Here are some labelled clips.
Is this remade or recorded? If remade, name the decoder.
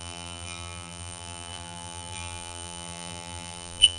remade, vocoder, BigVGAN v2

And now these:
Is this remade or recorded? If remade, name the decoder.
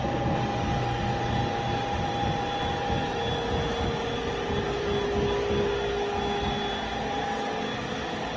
recorded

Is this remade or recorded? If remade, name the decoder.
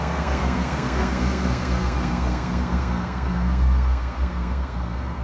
remade, codec, SNAC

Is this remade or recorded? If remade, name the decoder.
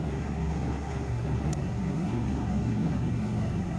remade, codec, SNAC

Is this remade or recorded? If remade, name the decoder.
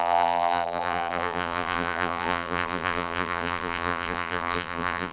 remade, vocoder, BigVGAN v2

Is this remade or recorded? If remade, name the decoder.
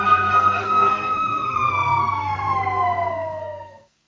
remade, codec, SNAC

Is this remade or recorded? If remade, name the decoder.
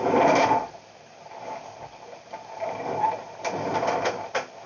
recorded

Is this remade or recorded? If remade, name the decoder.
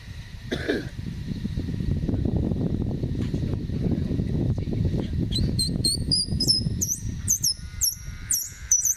remade, vocoder, BigVGAN v2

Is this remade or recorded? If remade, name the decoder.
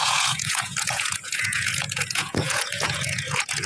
remade, vocoder, Vocos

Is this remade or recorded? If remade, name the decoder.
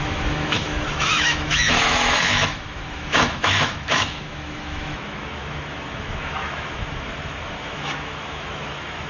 remade, autoencoder, DAC-VAE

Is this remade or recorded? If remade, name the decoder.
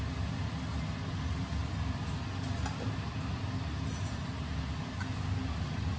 recorded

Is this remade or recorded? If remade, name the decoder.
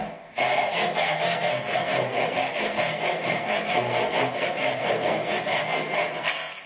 remade, codec, SNAC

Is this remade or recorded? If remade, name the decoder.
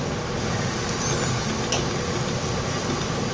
recorded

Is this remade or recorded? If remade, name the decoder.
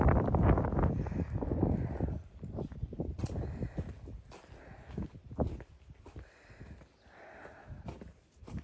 recorded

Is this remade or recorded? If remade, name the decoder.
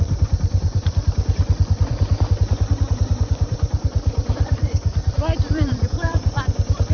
remade, vocoder, BigVGAN v2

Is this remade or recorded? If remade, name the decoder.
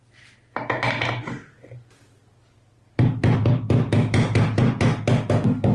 recorded